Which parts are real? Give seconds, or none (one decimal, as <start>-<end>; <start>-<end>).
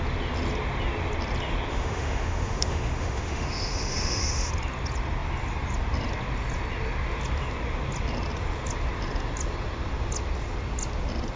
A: 0.0-1.7; 4.5-11.4